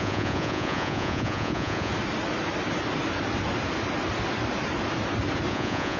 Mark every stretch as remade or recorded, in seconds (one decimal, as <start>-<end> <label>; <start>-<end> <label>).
0.0-1.9 remade; 1.9-5.5 recorded; 5.5-6.0 remade